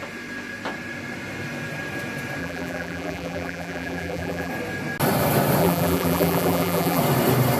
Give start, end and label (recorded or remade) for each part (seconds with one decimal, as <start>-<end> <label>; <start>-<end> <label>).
0.0-2.4 recorded; 2.4-4.5 remade; 4.5-5.6 recorded; 5.6-7.0 remade; 7.0-7.6 recorded

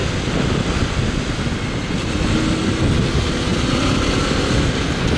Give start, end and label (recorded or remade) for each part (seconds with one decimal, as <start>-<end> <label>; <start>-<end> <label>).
0.0-3.5 recorded; 3.5-4.4 remade; 4.4-5.2 recorded

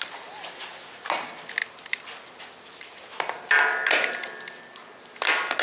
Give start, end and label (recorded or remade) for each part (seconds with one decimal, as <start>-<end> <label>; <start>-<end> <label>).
0.0-5.6 recorded